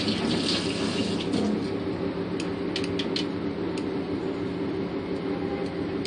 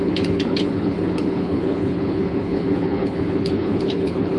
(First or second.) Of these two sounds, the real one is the first